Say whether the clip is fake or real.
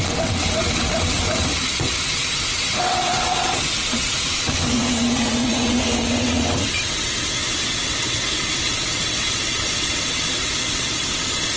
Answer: fake